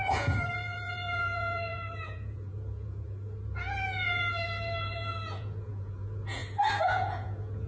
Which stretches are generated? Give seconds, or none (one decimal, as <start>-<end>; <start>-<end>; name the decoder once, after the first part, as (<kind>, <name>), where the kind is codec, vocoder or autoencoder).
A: 0.0-6.4 (vocoder, Vocos); 6.9-7.7